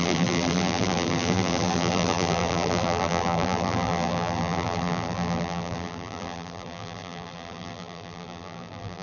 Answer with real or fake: fake